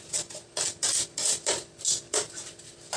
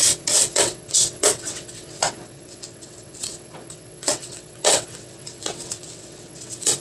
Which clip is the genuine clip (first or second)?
first